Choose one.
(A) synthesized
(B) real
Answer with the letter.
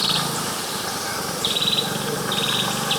A